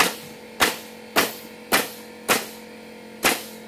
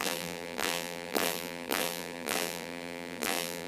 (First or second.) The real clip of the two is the first